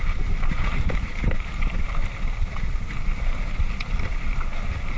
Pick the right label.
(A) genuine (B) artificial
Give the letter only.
A